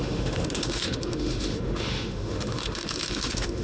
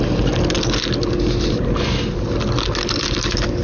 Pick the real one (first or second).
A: second